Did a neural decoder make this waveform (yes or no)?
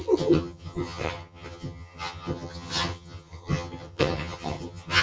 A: yes